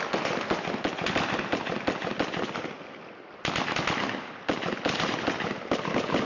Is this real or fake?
real